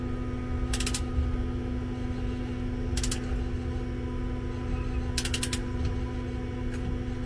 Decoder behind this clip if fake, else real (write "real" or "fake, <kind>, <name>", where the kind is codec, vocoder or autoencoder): real